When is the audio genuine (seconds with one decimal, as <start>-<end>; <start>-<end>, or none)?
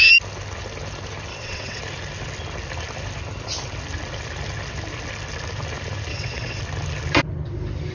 0.0-1.3; 1.8-6.1; 6.6-7.9